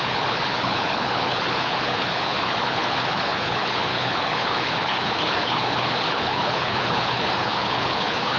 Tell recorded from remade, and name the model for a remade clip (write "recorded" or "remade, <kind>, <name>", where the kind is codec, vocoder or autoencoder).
remade, codec, HILCodec